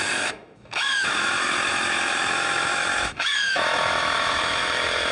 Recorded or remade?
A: remade